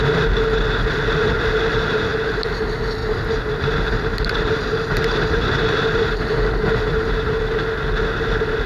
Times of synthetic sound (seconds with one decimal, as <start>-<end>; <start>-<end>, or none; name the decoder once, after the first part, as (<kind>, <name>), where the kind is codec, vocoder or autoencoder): 2.1-2.6 (vocoder, BigVGAN v2); 3.0-7.4